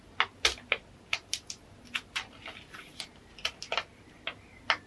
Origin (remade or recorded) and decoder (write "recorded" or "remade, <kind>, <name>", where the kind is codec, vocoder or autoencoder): recorded